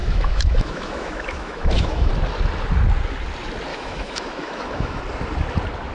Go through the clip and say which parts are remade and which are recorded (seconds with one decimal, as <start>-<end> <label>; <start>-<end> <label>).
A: 0.0-2.1 remade; 2.1-3.7 recorded; 3.7-5.0 remade; 5.0-5.9 recorded

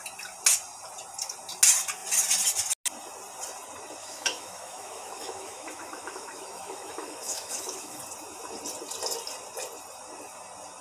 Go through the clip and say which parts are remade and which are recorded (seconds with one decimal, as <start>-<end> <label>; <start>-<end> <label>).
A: 0.0-4.0 recorded; 4.0-8.0 remade; 8.0-10.8 recorded

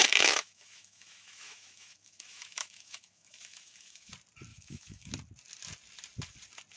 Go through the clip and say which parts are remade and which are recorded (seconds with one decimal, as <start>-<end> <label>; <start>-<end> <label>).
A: 0.0-4.1 remade; 4.1-4.5 recorded; 4.5-5.1 remade; 5.1-6.8 recorded